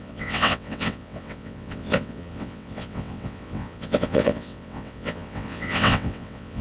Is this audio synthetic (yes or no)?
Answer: yes